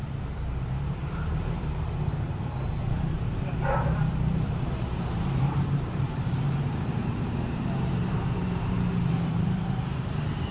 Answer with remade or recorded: remade